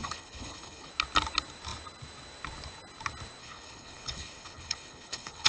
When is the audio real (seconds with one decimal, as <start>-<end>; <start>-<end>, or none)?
0.9-3.4